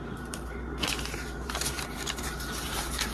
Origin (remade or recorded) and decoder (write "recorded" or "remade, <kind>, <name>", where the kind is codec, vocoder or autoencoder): remade, vocoder, BigVGAN v2